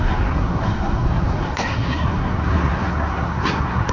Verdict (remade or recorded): remade